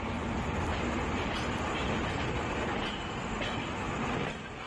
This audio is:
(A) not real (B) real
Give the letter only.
B